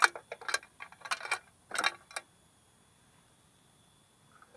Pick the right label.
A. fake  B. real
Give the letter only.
B